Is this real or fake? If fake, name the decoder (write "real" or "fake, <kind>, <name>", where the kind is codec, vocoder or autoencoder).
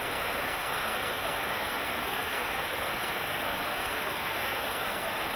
fake, codec, SNAC